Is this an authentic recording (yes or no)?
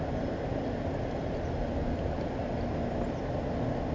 yes